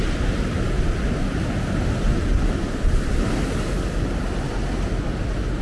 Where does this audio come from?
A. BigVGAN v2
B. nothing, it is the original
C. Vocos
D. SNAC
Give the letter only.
B